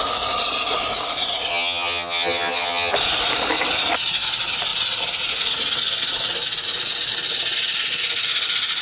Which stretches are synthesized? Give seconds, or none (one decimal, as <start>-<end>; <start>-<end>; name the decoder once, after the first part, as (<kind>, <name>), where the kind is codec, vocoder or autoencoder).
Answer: 1.5-2.9 (vocoder, HiFi-GAN)